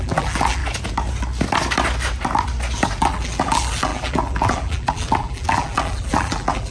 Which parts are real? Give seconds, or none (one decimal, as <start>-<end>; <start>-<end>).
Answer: 0.6-3.0